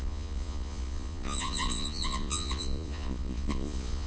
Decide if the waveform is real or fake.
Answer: fake